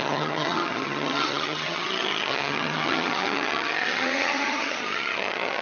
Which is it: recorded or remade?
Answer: remade